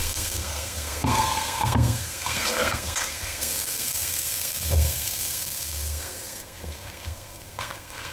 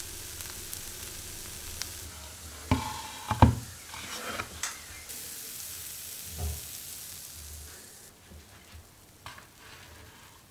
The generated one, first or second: first